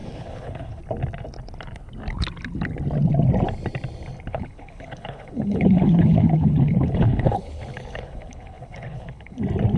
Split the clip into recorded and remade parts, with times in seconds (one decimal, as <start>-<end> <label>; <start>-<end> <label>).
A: 0.0-0.8 remade; 0.8-4.3 recorded; 4.3-9.4 remade; 9.4-9.8 recorded